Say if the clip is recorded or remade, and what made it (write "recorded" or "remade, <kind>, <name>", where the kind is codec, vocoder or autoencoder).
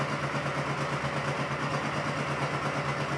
recorded